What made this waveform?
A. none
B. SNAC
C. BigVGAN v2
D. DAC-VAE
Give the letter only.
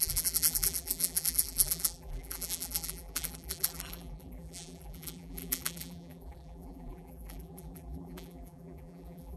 C